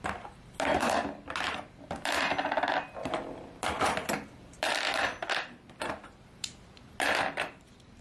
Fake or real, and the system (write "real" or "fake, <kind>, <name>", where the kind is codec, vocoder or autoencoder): fake, vocoder, BigVGAN v2